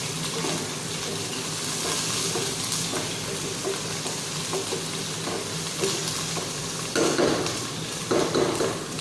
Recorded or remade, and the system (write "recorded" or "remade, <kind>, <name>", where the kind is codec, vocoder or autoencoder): recorded